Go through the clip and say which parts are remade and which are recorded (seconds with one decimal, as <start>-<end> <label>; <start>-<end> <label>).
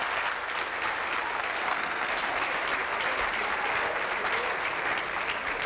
0.0-1.6 recorded; 1.6-2.1 remade; 2.1-5.7 recorded